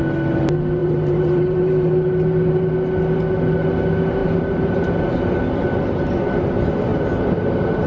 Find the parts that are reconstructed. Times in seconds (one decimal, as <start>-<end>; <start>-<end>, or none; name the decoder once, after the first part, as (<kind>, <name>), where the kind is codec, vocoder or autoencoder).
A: 0.8-2.7 (vocoder, BigVGAN v2); 4.2-4.9; 6.9-7.9